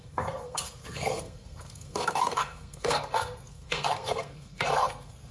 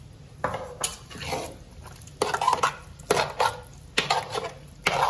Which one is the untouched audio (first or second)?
second